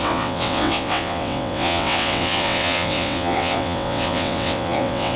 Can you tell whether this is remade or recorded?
remade